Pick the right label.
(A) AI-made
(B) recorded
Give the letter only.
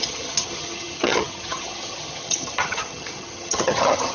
A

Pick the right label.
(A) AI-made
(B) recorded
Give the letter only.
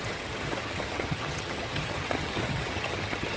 A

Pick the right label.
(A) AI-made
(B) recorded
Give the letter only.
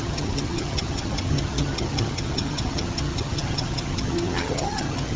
A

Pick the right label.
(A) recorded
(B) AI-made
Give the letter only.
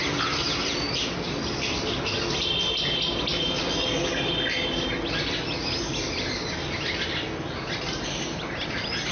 A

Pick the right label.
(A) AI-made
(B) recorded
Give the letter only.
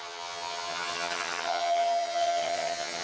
A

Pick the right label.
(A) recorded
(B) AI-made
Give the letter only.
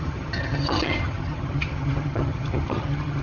B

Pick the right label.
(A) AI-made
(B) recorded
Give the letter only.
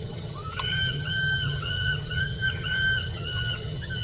A